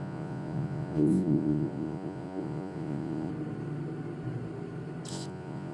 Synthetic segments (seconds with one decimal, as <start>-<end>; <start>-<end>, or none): 0.0-3.3; 5.1-5.7